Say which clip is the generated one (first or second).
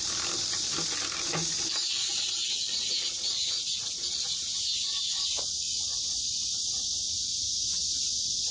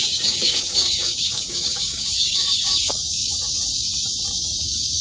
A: second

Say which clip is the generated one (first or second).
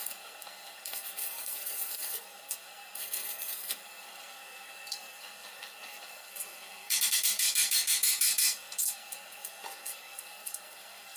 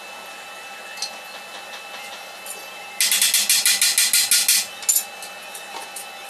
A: first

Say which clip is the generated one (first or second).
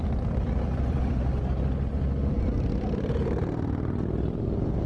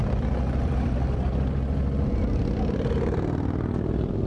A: first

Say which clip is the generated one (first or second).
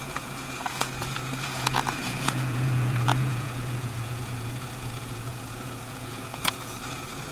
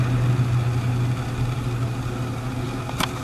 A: first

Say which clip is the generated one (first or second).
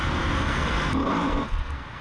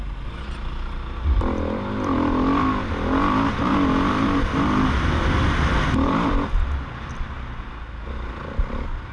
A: first